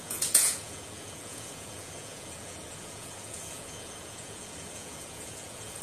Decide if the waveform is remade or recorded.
remade